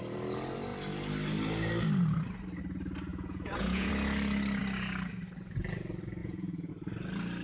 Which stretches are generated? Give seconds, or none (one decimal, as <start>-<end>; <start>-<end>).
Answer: 3.1-3.9; 6.2-6.7